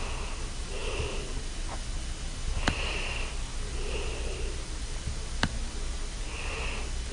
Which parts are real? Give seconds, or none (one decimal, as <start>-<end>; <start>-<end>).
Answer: 0.0-7.1